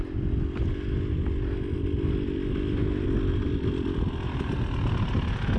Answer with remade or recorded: recorded